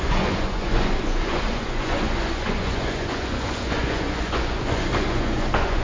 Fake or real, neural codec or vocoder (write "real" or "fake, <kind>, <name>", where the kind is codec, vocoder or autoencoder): fake, vocoder, Vocos